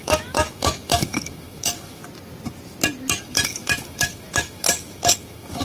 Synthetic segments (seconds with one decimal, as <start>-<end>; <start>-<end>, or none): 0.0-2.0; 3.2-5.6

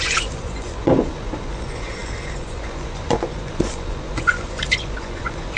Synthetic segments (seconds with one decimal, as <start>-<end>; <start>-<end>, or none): 0.0-5.6

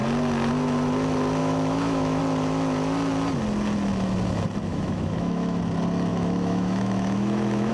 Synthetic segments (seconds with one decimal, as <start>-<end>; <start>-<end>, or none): 1.4-2.2; 4.7-5.6; 6.1-7.7

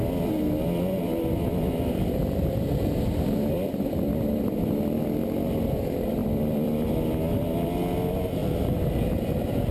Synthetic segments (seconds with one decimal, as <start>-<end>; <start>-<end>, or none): 6.2-6.9